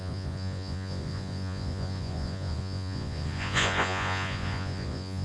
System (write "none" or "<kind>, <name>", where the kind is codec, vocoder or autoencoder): vocoder, Vocos